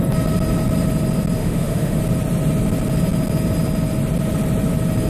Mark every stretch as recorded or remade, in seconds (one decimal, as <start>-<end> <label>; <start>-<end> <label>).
0.0-1.4 recorded; 1.4-2.0 remade; 2.0-5.1 recorded